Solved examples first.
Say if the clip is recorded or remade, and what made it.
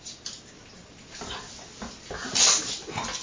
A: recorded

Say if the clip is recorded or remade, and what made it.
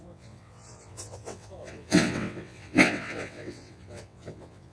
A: remade, vocoder, WaveNeXt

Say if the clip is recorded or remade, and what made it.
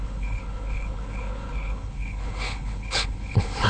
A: remade, codec, HILCodec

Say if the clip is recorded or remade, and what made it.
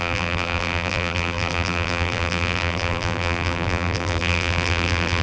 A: remade, vocoder, BigVGAN v2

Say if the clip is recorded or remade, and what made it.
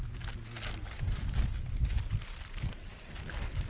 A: recorded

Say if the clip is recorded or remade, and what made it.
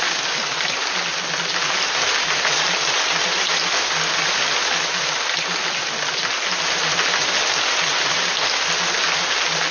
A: recorded